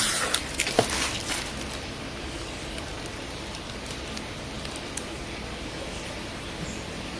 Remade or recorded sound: remade